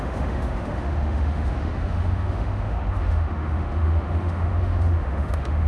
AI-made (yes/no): yes